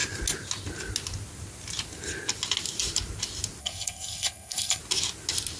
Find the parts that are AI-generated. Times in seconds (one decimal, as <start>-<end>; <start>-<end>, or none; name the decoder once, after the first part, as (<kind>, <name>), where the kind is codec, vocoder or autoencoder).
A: 3.6-4.8 (codec, SNAC)